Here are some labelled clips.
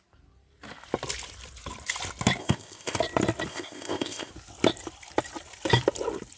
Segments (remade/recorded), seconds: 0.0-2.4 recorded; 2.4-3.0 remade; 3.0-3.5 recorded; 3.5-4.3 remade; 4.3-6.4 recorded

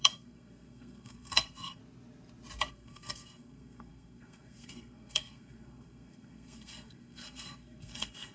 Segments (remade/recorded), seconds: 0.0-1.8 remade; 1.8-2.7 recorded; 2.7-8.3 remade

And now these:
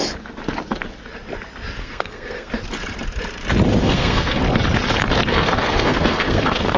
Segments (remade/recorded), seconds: 0.0-1.8 recorded; 1.8-2.5 remade; 2.5-3.8 recorded; 3.8-4.4 remade; 4.4-5.3 recorded; 5.3-6.8 remade

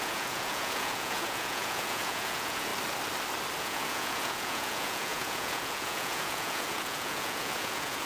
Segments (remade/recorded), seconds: 0.0-2.7 remade; 2.7-3.6 recorded; 3.6-8.1 remade